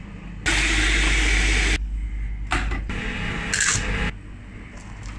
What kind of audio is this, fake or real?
real